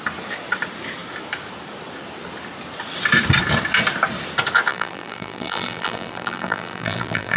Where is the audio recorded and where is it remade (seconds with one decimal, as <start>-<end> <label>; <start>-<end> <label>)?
0.0-4.7 recorded; 4.7-7.4 remade